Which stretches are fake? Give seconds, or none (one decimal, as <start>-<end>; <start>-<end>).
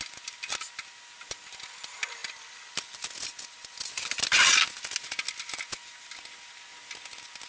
none